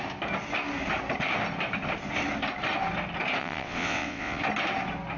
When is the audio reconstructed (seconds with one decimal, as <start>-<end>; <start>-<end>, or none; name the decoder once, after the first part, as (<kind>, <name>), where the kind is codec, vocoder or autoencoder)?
3.4-4.4 (vocoder, WaveNeXt)